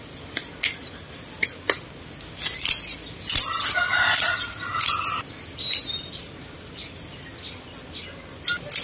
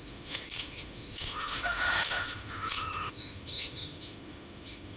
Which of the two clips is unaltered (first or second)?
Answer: first